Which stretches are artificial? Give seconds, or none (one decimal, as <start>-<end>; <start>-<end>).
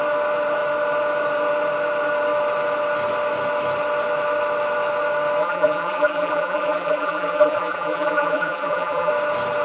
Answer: 5.4-9.1